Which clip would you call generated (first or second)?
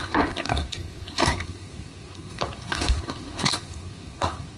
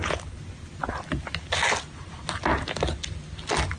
first